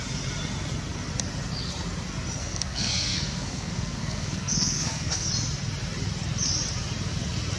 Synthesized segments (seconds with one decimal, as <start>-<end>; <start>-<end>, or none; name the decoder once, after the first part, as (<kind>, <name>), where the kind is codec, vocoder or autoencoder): 2.4-5.3 (codec, SNAC)

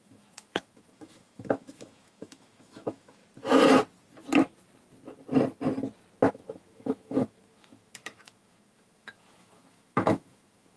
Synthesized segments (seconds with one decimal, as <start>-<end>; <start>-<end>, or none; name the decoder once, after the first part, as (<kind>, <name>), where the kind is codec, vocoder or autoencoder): 0.0-3.2 (autoencoder, DAC-VAE); 6.3-10.8

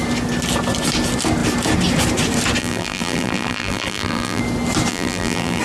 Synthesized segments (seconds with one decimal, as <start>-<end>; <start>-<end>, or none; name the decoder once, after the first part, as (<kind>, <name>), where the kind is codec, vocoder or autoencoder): 2.6-4.4 (vocoder, BigVGAN v2); 4.9-5.6